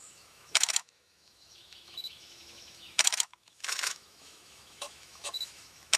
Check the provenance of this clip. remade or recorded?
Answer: remade